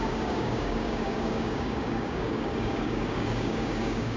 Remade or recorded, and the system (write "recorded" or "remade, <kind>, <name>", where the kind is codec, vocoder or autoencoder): remade, codec, DAC